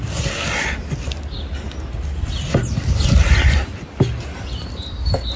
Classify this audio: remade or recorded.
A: recorded